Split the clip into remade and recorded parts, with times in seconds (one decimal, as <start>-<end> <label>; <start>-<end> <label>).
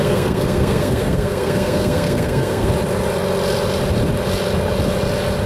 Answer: 0.0-2.7 remade; 2.7-5.5 recorded